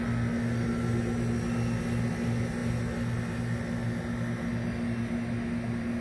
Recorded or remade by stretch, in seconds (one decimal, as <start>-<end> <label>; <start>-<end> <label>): 0.0-6.0 recorded